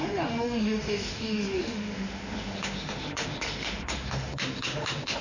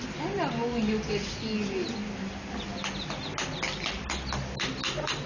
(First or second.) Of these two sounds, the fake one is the first